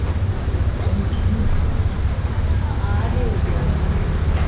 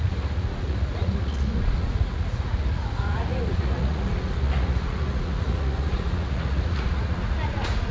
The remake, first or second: second